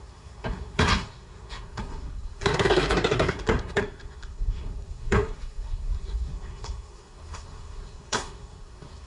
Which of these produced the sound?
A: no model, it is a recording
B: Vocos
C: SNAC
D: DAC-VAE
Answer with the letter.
C